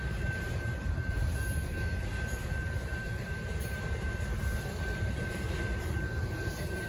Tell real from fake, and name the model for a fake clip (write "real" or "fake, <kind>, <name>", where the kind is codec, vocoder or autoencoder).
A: fake, vocoder, BigVGAN v2